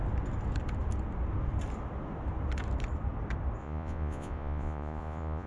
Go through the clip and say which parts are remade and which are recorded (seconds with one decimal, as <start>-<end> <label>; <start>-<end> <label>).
0.0-3.6 recorded; 3.6-5.5 remade